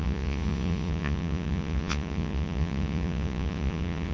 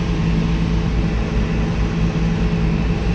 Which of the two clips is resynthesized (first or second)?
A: first